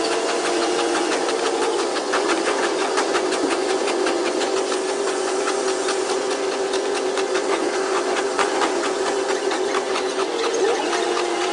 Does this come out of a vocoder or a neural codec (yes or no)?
yes